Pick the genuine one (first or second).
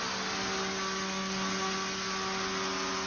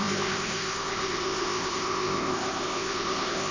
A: first